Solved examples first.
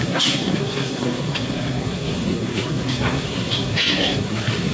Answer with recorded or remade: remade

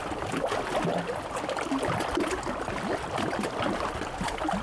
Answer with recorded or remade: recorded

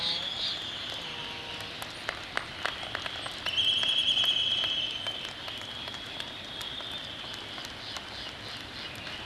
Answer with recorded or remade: recorded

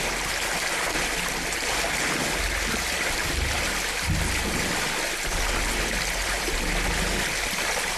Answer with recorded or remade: recorded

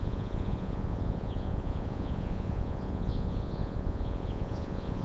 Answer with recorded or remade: remade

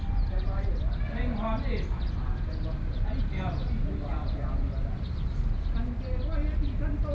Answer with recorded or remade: recorded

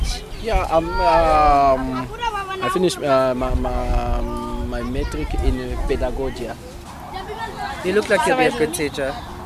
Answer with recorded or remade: recorded